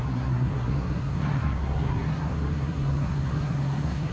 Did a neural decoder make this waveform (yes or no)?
yes